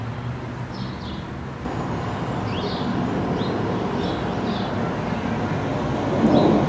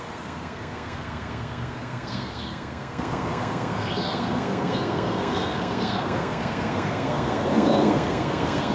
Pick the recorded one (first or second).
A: first